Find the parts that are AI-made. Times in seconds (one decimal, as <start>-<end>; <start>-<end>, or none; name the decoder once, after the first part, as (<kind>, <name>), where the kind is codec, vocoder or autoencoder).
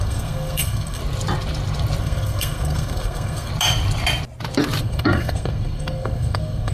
0.0-1.0 (codec, SNAC); 2.0-3.5; 4.8-6.7